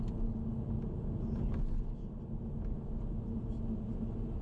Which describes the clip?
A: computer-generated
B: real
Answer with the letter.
B